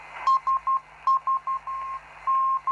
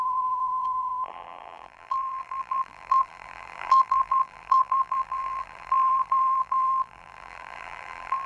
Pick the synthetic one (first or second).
second